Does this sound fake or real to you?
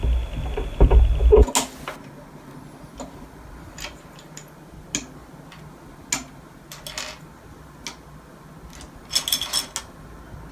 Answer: real